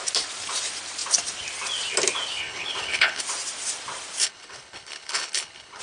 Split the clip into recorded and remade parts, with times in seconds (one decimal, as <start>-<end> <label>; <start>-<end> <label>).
0.0-2.4 recorded; 2.4-3.2 remade; 3.2-4.2 recorded; 4.2-5.8 remade